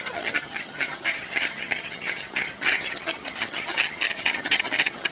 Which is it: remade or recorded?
remade